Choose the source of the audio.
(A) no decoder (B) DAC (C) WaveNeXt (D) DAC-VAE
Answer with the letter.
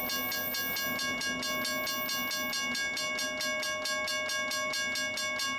A